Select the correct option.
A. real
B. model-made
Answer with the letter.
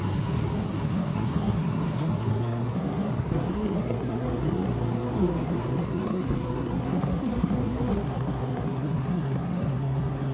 B